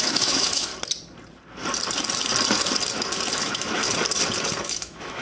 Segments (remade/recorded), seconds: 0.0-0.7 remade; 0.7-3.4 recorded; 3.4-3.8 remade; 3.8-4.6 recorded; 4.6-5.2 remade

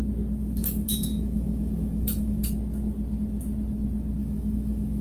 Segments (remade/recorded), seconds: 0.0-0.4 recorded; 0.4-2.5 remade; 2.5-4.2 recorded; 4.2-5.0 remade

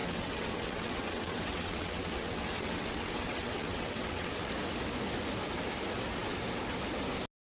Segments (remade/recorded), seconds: 0.0-4.5 remade; 4.5-7.5 recorded